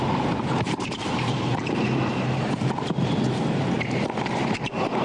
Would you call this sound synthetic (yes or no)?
yes